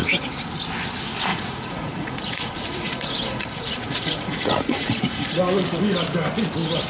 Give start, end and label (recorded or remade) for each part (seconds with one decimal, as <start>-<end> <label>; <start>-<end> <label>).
0.0-1.3 recorded; 1.3-5.4 remade; 5.4-6.9 recorded